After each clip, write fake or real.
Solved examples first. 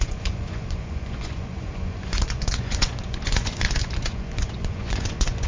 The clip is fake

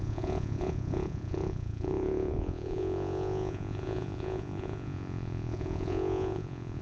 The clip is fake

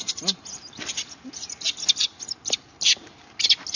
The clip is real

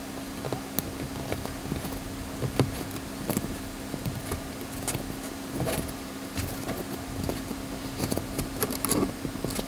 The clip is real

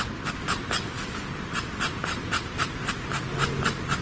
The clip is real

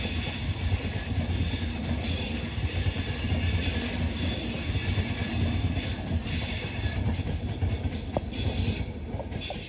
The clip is real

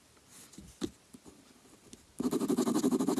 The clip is real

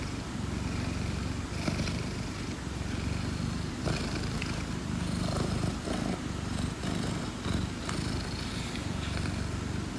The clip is real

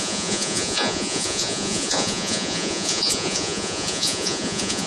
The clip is fake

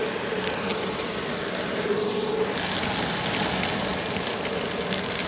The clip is real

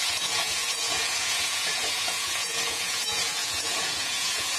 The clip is fake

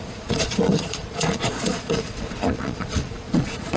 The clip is fake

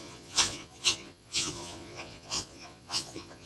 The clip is fake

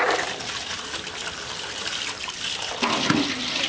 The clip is real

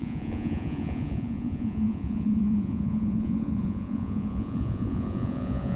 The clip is fake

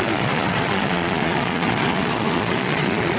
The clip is fake